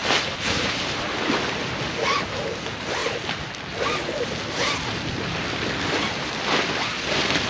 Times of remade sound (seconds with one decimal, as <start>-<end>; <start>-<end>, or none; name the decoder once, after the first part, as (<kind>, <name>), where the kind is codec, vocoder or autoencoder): none